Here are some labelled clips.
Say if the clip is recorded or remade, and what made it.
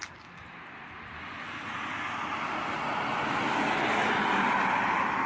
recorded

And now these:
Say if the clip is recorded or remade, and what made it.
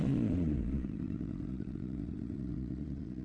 remade, vocoder, Vocos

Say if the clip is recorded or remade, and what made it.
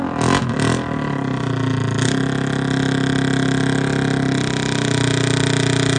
recorded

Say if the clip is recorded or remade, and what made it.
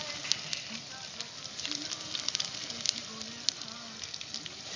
recorded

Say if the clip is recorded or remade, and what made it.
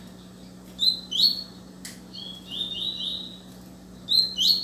recorded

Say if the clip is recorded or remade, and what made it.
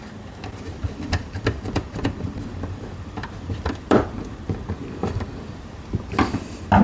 remade, vocoder, BigVGAN v2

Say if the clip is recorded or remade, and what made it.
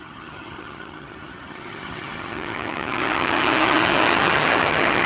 remade, vocoder, HiFi-GAN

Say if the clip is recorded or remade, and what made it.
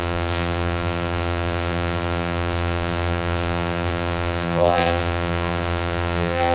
remade, vocoder, BigVGAN v2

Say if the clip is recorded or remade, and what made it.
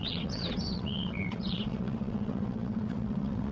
remade, vocoder, WaveNeXt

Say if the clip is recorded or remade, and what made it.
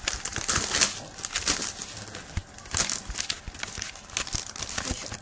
recorded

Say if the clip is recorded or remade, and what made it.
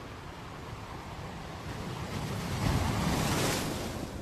recorded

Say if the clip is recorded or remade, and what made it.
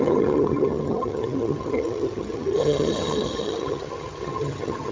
remade, vocoder, HiFi-GAN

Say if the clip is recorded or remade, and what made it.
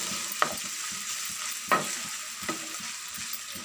recorded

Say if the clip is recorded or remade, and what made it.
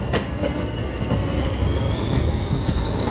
remade, codec, SNAC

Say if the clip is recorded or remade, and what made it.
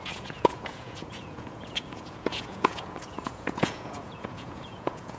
remade, vocoder, Vocos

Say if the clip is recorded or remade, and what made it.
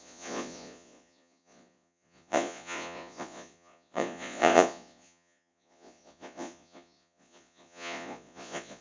remade, vocoder, Vocos